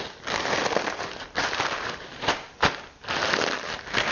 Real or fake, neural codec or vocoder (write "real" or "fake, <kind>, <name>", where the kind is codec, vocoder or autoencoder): real